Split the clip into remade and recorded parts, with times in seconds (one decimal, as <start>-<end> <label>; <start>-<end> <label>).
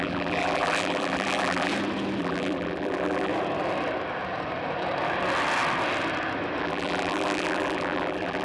0.0-1.7 remade; 1.7-2.2 recorded; 2.2-3.3 remade; 3.3-6.6 recorded; 6.6-8.4 remade